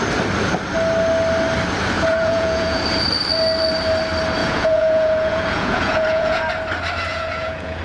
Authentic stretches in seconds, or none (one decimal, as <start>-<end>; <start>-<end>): 0.0-2.1; 2.8-4.4; 6.4-7.1